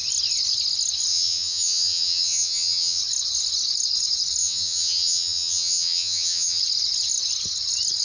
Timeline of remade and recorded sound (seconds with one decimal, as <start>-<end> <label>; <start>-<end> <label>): 0.0-1.1 recorded; 1.1-3.0 remade; 3.0-4.4 recorded; 4.4-6.6 remade; 6.6-8.0 recorded